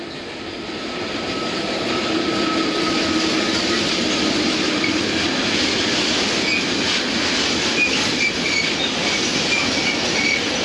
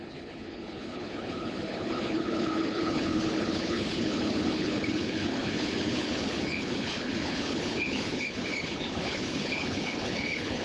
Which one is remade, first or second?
second